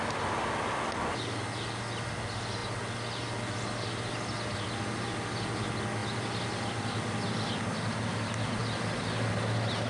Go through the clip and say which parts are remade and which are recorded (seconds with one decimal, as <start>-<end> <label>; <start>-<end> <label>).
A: 0.0-9.9 recorded